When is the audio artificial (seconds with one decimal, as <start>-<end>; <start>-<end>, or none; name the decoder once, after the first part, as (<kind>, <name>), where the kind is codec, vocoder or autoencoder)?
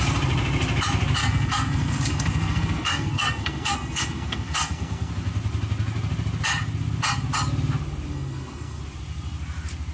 1.2-5.1 (codec, SNAC); 8.1-8.8